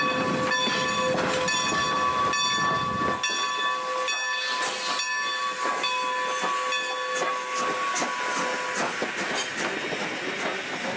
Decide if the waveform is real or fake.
real